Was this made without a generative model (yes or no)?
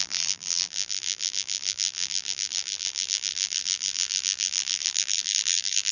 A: no